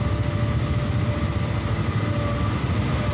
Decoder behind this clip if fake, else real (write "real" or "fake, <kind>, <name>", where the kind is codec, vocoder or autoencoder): real